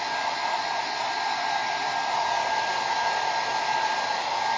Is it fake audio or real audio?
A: real